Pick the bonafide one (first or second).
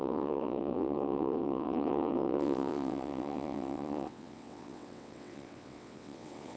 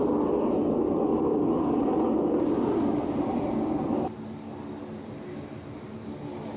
second